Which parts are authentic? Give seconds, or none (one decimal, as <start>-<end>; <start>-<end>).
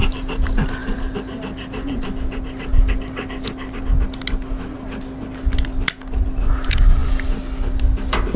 0.0-8.4